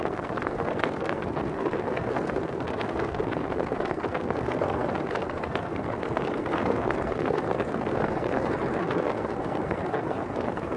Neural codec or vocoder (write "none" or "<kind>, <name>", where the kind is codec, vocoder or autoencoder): codec, SNAC